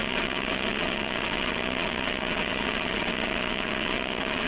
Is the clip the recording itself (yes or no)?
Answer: no